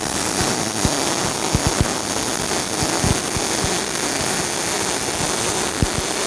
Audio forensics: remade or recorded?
recorded